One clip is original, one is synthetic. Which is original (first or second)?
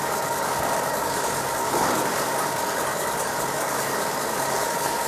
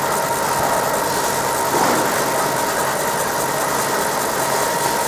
second